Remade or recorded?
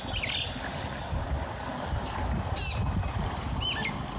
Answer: recorded